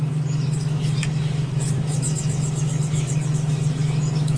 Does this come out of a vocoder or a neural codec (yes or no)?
yes